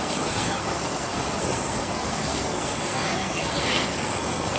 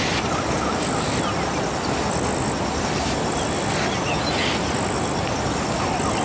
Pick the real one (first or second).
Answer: second